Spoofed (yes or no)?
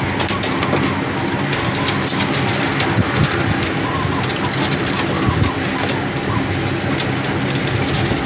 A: no